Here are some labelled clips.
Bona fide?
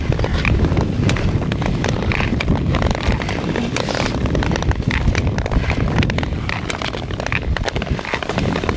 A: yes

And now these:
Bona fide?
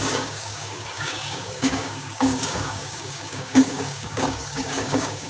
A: no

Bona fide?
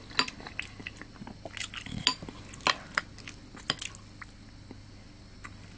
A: yes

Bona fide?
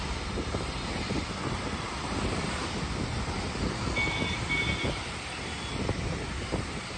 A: yes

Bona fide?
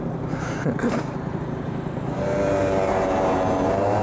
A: no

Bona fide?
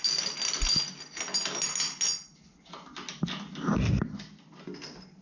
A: yes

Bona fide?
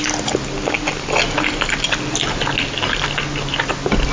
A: yes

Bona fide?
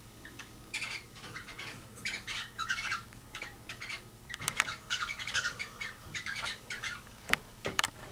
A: no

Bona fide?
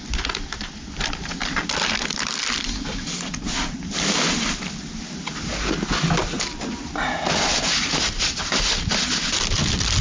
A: yes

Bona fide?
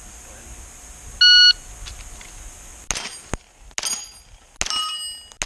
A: yes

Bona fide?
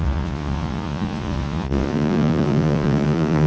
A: no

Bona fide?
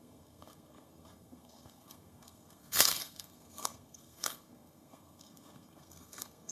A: no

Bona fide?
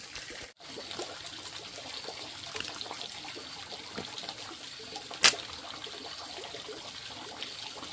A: yes